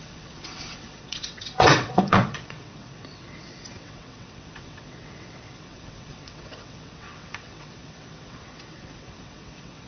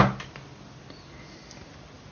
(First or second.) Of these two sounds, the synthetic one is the first